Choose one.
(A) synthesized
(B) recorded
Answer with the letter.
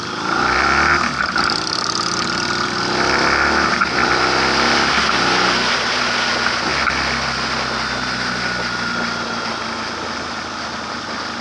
B